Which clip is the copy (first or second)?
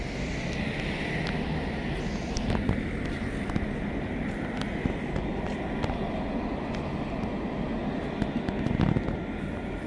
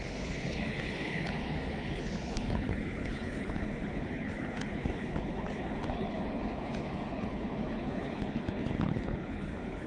second